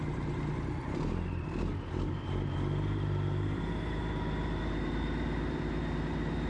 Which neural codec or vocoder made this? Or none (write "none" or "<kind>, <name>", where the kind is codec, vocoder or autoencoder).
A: vocoder, BigVGAN v2